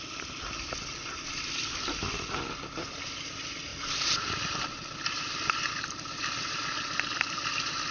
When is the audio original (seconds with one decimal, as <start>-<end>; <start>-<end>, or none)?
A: 0.0-7.9

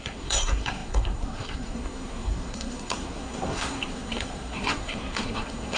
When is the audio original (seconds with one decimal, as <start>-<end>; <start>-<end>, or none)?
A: none

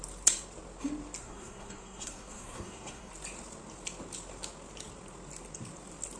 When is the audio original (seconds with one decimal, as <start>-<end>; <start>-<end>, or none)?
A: 0.0-1.2; 3.1-6.2

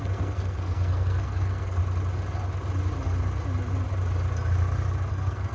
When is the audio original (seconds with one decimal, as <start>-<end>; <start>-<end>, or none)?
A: 1.8-5.1

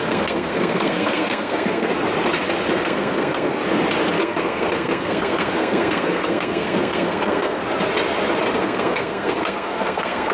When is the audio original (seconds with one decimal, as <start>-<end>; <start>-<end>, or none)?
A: 1.9-2.8; 3.6-4.1; 7.6-8.6